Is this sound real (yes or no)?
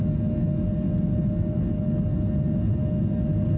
yes